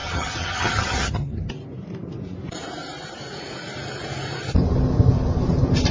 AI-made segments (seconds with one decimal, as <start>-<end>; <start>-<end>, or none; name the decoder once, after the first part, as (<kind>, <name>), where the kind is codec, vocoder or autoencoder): 0.0-1.5 (vocoder, HiFi-GAN)